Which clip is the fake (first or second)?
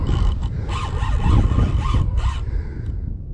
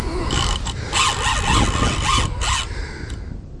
first